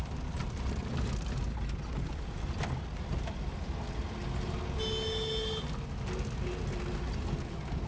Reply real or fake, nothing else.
real